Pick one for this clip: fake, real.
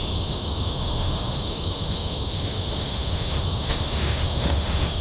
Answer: fake